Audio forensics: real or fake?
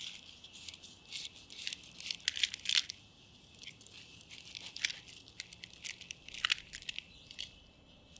real